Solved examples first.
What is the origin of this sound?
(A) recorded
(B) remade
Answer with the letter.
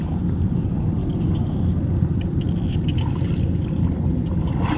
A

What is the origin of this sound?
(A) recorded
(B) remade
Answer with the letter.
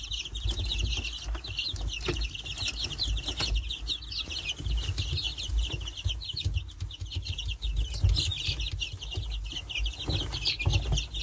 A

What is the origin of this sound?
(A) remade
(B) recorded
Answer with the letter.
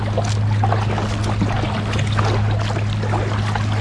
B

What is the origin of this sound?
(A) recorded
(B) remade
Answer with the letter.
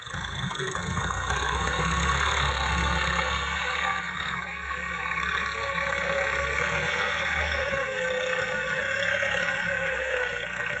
B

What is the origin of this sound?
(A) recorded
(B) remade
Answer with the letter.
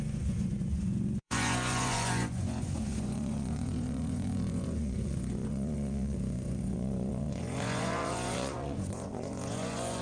B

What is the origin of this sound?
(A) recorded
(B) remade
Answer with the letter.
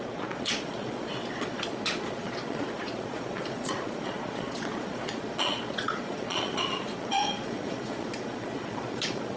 B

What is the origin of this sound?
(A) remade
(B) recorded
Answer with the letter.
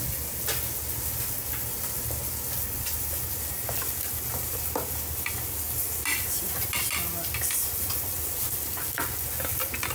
B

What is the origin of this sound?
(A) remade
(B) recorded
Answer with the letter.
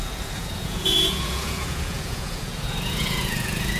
A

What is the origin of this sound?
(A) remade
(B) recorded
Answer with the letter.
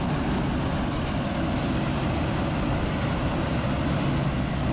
B